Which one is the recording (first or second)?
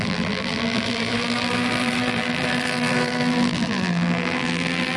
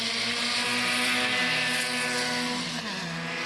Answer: second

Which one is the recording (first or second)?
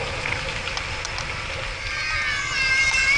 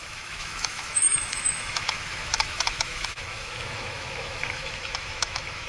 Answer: first